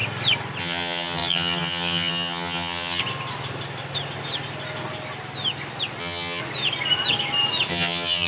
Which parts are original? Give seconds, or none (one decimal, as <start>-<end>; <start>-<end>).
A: 0.0-0.6; 3.0-6.0; 6.4-7.7